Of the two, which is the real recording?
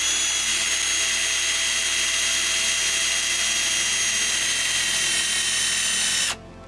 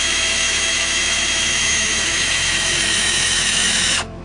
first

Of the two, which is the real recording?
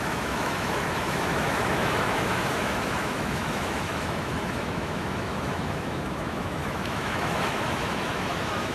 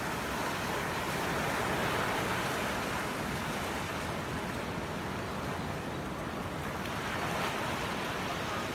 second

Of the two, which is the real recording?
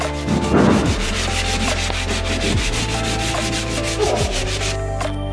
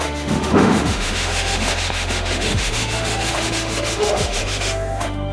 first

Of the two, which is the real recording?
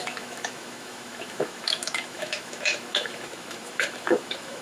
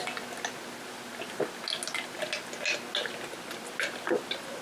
second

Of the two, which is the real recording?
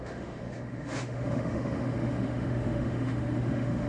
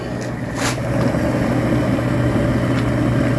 second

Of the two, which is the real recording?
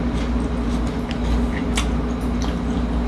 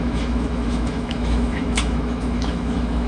first